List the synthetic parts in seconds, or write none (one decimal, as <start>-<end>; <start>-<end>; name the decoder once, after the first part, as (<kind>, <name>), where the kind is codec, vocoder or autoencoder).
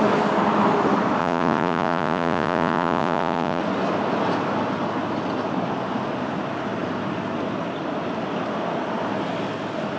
1.2-3.6 (vocoder, Vocos)